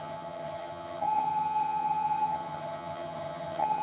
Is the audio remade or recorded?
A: remade